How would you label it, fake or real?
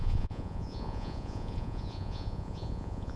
fake